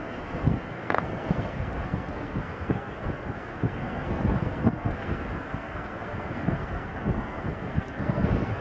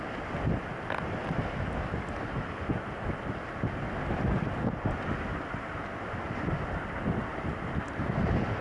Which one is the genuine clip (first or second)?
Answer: second